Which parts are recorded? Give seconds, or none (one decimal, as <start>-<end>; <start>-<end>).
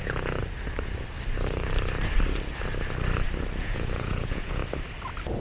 0.4-3.6; 4.6-5.4